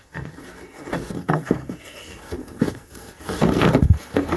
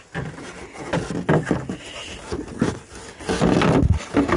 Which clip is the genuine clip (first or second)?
second